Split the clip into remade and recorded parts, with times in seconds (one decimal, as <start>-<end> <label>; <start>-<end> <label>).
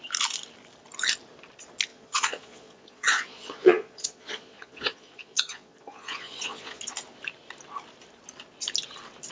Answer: 0.0-1.9 recorded; 1.9-6.8 remade; 6.8-9.3 recorded